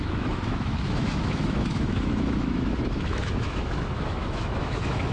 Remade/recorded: remade